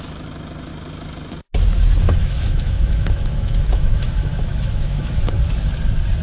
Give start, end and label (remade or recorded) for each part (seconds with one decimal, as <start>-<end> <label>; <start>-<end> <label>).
0.0-2.2 recorded; 2.2-5.0 remade; 5.0-6.2 recorded

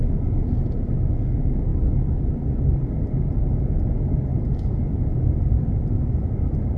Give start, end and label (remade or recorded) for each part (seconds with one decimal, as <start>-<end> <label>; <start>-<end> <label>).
0.0-4.3 recorded; 4.3-6.8 remade

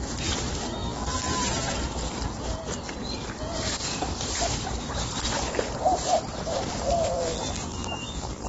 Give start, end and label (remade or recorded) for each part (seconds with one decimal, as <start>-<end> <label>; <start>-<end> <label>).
0.0-0.8 recorded; 0.8-1.4 remade; 1.4-7.1 recorded; 7.1-8.5 remade